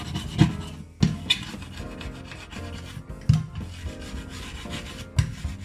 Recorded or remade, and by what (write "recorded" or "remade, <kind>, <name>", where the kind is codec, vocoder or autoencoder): recorded